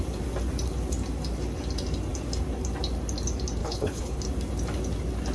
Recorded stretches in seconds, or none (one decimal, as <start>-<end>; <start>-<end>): 0.0-3.6; 4.2-5.3